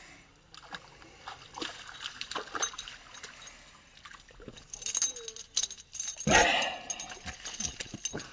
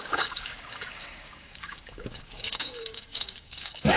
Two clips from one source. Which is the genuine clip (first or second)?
first